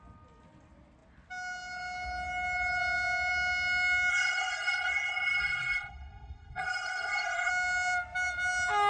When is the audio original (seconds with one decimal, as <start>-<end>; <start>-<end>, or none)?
0.0-4.1; 7.5-8.9